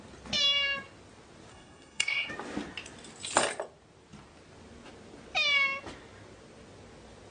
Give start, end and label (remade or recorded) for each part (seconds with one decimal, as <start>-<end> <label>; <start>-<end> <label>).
0.0-1.5 recorded; 1.5-2.3 remade; 2.3-7.3 recorded